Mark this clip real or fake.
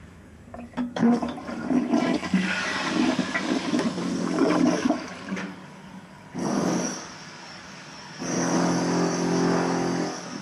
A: fake